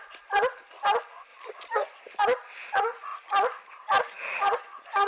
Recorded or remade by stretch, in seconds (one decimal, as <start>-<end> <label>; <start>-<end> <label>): 0.0-5.1 recorded